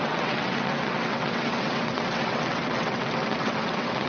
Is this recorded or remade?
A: remade